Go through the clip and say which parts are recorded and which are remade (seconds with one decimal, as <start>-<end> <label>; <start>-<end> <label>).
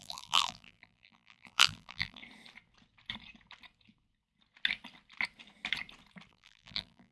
0.0-2.2 remade; 2.2-6.3 recorded; 6.3-7.1 remade